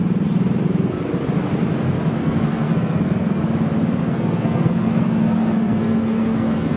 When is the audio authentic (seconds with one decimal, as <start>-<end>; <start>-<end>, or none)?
0.0-2.2; 3.4-4.0